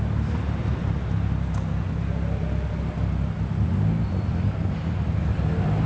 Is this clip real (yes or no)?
yes